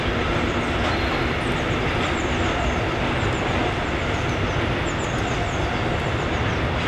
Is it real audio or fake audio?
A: real